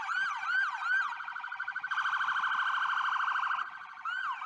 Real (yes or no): yes